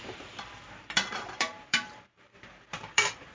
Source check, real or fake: fake